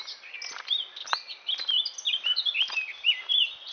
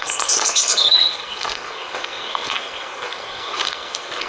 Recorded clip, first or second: first